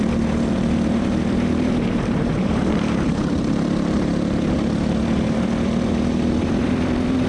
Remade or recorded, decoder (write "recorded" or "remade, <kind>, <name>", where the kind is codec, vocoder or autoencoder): remade, vocoder, BigVGAN v2